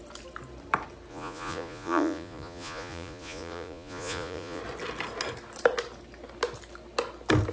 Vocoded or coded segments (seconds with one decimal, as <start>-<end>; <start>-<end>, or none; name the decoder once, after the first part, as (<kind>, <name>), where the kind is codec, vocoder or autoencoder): 1.1-4.6 (vocoder, Vocos)